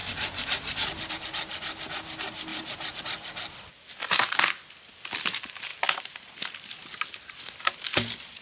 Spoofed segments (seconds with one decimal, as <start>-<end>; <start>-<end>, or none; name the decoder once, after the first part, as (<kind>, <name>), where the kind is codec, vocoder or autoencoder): 0.0-1.1 (vocoder, BigVGAN v2); 2.5-3.0